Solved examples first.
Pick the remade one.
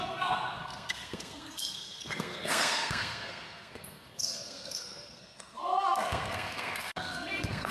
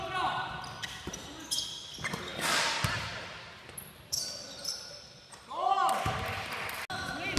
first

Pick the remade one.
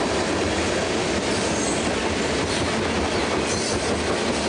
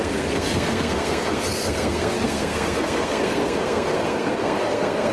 second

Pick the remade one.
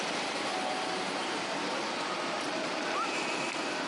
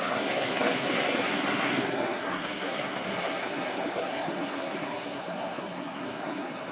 second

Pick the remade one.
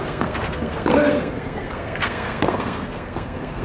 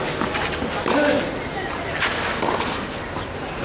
first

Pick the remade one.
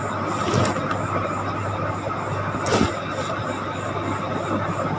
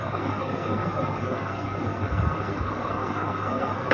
second